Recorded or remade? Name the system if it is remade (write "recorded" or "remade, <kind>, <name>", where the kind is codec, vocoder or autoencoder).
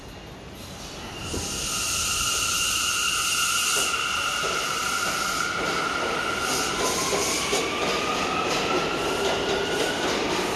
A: recorded